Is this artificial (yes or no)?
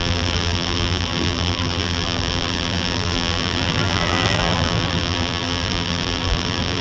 yes